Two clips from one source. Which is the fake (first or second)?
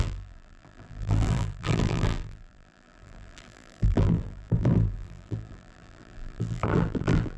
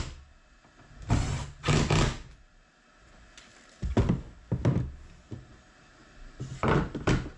first